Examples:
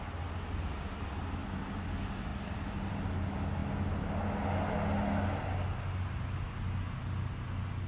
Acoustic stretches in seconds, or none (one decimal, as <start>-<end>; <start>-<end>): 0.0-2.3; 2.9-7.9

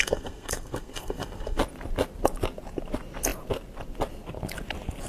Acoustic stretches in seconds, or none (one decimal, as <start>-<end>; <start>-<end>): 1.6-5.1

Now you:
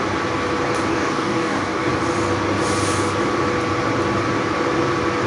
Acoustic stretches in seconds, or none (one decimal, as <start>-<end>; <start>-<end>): 0.0-0.9; 1.9-5.3

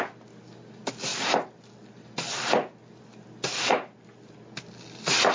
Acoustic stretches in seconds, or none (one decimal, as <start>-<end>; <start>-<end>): 0.0-5.3

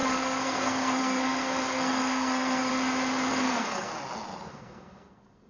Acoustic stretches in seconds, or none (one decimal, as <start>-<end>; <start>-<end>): 2.7-3.3; 3.9-4.5